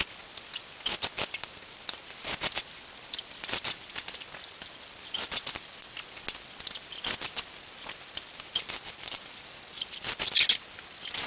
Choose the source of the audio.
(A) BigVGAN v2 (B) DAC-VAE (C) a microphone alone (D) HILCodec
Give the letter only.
C